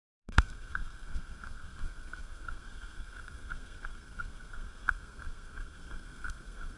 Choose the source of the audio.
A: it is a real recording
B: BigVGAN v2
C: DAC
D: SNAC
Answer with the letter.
D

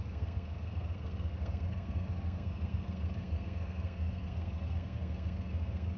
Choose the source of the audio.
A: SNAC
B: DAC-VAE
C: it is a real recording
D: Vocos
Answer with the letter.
A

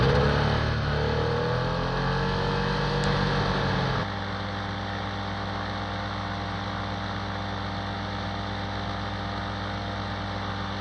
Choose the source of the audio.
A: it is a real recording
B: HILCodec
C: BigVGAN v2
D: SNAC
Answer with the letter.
A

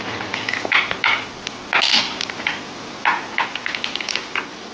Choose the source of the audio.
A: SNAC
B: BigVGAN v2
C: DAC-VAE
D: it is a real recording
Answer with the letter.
D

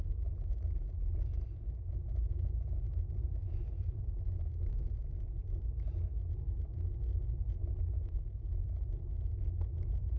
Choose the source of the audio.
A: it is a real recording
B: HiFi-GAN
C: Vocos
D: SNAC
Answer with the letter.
A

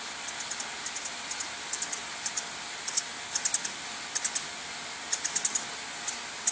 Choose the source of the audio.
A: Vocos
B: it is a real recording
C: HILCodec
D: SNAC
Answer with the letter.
B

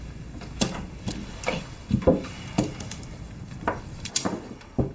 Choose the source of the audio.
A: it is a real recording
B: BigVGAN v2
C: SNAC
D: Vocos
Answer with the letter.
A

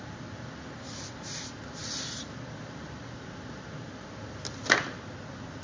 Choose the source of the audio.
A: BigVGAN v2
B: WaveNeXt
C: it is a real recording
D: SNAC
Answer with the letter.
C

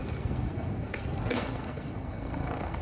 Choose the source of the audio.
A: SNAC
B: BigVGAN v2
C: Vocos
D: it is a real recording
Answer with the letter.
A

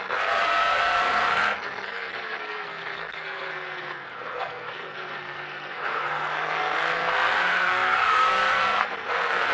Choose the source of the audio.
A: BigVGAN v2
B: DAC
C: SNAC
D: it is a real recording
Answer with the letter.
C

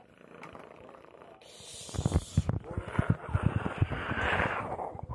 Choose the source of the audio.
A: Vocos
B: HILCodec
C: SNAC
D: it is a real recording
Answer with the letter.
D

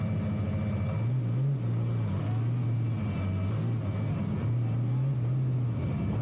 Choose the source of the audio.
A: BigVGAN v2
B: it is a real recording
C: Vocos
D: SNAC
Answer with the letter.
B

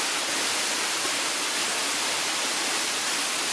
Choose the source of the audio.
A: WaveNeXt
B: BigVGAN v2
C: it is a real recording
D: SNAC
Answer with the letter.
C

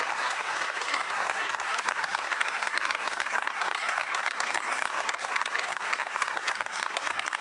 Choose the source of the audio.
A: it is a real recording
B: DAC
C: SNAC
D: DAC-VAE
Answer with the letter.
C